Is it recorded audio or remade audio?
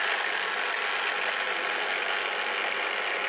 recorded